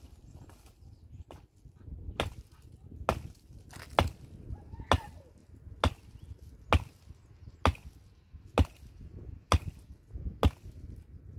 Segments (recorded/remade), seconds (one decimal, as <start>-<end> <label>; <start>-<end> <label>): 0.0-11.4 recorded